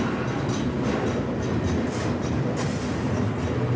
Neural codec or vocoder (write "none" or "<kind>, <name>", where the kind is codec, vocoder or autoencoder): none